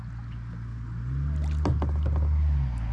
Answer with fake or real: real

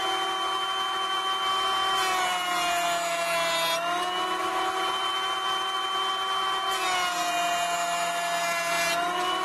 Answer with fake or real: real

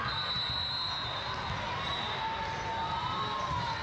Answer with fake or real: real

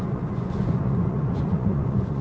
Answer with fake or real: fake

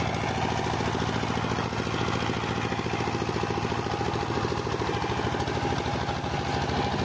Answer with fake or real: real